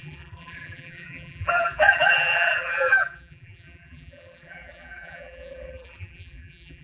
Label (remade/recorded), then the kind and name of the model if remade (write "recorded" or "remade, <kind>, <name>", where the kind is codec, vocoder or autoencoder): remade, vocoder, BigVGAN v2